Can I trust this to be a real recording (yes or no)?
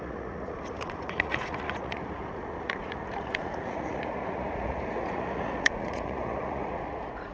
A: no